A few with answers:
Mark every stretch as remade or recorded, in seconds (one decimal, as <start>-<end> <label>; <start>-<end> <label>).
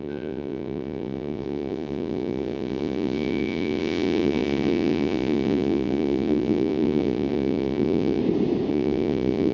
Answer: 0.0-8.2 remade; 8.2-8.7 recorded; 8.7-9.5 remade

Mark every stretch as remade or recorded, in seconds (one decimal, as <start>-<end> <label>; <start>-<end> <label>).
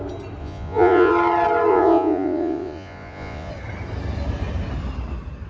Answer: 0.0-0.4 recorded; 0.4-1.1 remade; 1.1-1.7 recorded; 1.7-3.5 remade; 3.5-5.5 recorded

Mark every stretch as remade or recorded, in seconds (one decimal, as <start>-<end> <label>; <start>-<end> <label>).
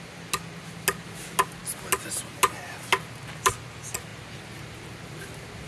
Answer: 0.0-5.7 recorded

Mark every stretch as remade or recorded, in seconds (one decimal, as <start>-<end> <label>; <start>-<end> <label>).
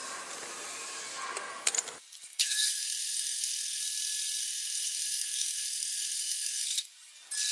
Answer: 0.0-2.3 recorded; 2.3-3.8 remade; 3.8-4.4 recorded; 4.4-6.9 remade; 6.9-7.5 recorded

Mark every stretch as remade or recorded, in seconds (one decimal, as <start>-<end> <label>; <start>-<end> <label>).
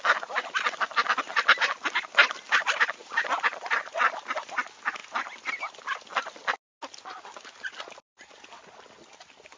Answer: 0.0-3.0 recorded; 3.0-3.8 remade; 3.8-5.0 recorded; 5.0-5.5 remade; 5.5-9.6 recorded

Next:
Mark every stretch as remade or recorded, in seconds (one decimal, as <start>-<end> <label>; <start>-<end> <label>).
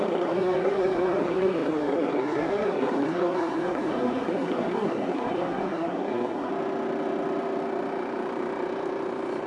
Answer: 0.0-6.5 remade; 6.5-9.5 recorded